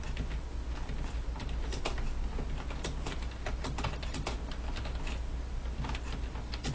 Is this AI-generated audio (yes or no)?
no